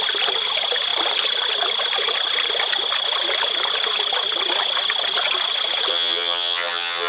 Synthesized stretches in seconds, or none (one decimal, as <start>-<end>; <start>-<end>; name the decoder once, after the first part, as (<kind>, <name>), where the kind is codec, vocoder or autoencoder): 5.9-7.1 (vocoder, HiFi-GAN)